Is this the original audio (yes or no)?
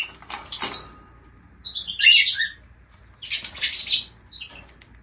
yes